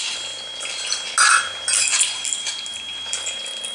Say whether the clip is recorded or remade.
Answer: recorded